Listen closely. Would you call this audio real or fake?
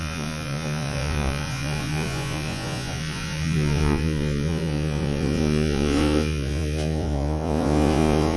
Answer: fake